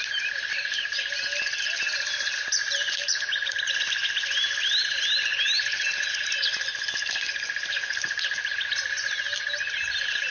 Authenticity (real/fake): real